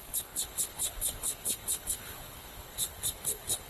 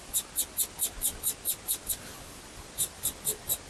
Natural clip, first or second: second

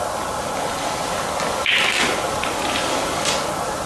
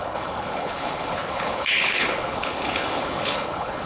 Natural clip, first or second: first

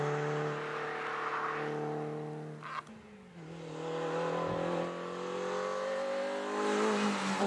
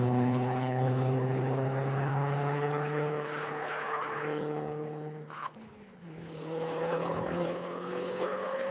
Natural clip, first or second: first